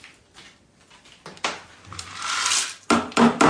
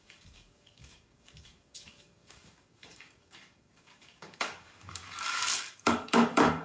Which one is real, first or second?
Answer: first